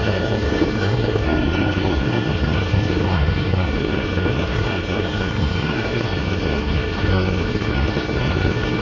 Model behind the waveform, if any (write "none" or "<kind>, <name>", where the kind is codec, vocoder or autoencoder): codec, SNAC